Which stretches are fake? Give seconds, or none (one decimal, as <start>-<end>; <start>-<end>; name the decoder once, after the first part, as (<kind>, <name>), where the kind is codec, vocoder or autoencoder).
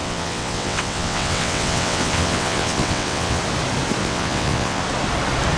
0.0-3.4 (vocoder, WaveNeXt); 4.0-4.8